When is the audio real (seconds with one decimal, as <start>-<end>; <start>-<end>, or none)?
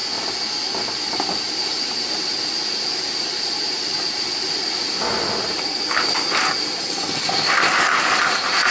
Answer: 0.0-4.6; 5.7-8.7